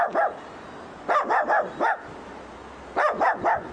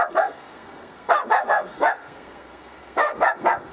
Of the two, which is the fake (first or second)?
second